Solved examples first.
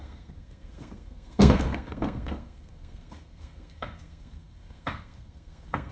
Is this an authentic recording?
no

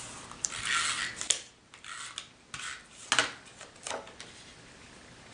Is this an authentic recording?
yes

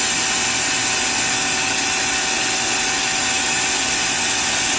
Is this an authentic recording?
yes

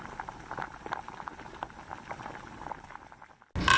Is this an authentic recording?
yes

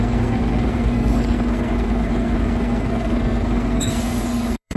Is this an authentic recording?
no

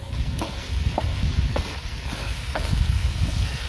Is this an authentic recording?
no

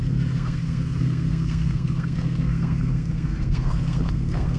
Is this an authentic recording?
no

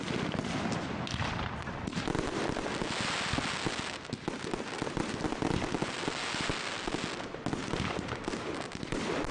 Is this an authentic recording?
yes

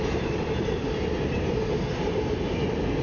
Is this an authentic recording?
yes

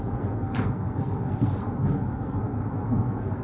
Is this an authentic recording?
no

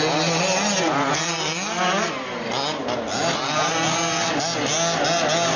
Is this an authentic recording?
yes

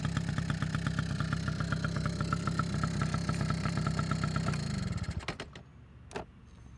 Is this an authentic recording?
yes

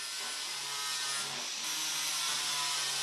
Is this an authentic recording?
yes